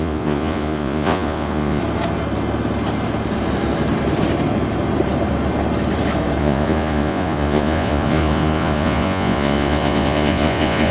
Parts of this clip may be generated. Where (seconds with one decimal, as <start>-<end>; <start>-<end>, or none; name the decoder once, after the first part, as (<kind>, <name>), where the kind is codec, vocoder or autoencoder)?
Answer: 0.0-1.8 (vocoder, Vocos); 6.4-10.9